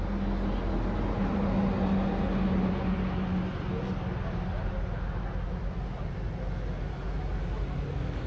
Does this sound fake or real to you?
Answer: real